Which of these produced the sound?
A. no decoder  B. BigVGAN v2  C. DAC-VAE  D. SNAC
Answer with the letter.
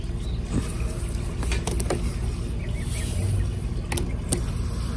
A